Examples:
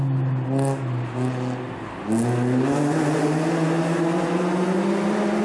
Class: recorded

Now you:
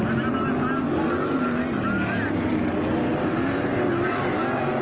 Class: recorded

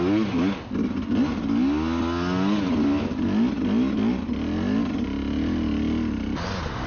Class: recorded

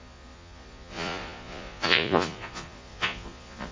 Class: remade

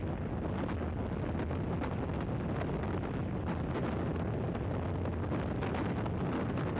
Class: recorded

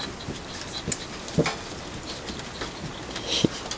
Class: recorded